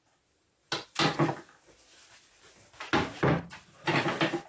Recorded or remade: recorded